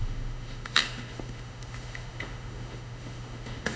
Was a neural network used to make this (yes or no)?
yes